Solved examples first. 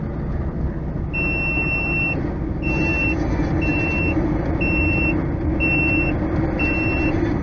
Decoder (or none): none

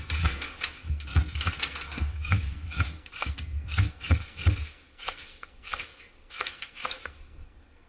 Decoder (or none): codec, SNAC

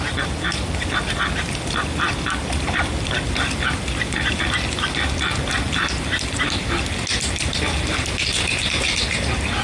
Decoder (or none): none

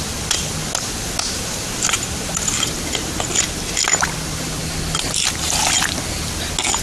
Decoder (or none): none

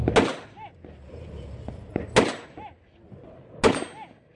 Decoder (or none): none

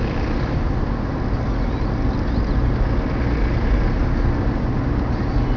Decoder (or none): none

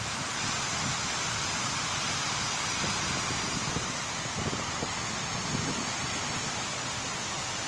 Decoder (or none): none